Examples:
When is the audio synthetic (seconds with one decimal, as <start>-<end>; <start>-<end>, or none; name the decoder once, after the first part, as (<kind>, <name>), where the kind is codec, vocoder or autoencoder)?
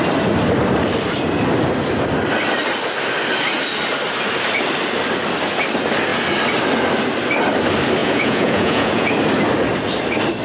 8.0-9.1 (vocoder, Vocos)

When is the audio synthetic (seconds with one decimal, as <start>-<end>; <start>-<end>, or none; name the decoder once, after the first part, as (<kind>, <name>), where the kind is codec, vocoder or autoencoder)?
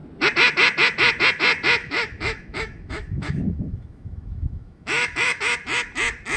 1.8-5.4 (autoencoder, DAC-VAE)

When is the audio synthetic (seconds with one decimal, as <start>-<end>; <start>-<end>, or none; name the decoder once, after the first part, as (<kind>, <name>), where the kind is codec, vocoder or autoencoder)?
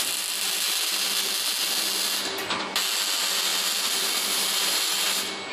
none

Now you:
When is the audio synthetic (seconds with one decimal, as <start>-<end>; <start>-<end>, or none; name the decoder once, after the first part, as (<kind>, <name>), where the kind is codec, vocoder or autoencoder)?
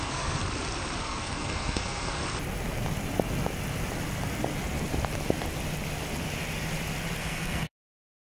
0.0-0.4 (codec, SNAC); 1.0-2.2; 7.2-8.3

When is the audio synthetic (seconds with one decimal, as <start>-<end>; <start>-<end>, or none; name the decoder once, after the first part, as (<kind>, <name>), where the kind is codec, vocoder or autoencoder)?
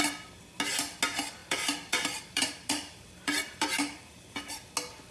1.4-4.5 (vocoder, BigVGAN v2)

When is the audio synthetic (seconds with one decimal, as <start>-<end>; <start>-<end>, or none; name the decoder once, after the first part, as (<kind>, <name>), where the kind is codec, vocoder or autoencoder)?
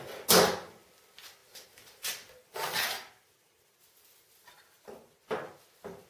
none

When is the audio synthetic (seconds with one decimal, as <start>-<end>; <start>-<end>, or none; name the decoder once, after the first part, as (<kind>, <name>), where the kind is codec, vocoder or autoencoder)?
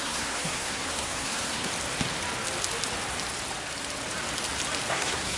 0.0-1.7 (codec, SNAC); 4.9-5.4